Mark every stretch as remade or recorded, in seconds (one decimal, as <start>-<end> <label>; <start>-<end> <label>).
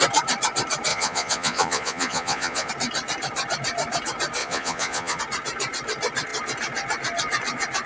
0.0-0.9 recorded; 0.9-2.7 remade; 2.7-4.4 recorded; 4.4-5.2 remade; 5.2-7.9 recorded